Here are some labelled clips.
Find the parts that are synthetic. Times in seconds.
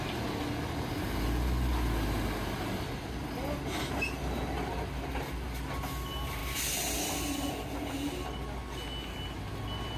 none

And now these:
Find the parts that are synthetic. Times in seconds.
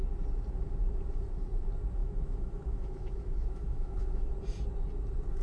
2.0-4.3 (autoencoder, DAC-VAE)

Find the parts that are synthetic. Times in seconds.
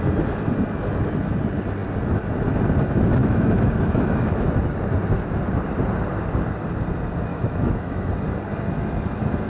3.2-4.5 (autoencoder, DAC-VAE); 7.3-8.1